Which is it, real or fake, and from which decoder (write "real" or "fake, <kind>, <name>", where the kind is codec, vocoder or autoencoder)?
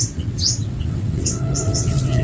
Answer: fake, vocoder, WaveNeXt